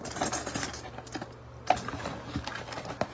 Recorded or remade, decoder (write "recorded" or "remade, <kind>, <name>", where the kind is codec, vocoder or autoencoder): recorded